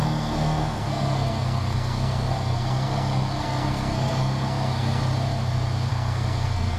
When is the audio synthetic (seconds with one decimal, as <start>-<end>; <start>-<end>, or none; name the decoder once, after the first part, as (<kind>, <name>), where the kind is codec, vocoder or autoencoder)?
0.0-5.0 (codec, SNAC); 5.9-6.8

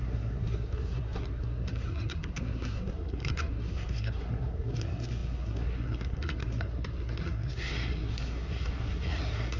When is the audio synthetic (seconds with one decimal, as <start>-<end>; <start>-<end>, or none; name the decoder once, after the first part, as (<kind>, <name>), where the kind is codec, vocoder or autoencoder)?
0.0-9.6 (codec, SNAC)

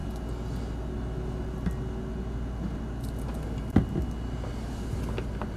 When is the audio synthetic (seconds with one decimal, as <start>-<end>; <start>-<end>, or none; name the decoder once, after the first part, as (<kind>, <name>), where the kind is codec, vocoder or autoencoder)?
none

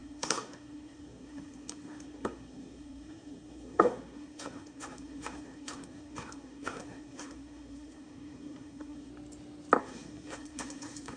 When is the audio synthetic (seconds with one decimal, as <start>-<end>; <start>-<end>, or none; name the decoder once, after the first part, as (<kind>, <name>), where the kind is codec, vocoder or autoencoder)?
0.0-9.1 (codec, SNAC); 9.8-11.2

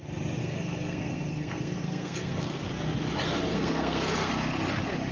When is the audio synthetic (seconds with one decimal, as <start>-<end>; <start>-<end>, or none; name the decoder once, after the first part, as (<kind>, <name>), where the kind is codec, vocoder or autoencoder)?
0.4-2.7 (codec, SNAC); 3.5-4.3

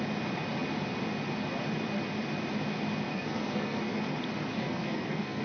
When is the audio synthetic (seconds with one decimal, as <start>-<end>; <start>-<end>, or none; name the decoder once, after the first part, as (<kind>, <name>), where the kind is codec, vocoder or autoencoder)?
3.1-4.0 (codec, SNAC); 4.5-5.4

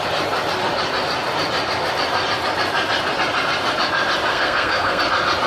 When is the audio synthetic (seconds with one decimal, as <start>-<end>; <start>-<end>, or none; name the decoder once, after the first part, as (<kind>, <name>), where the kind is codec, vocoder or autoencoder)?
4.3-5.0 (codec, SNAC)

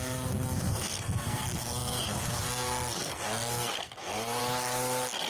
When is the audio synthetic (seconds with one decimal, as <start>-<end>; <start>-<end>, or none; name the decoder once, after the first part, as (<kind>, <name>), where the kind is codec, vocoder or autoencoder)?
0.0-4.4 (codec, SNAC)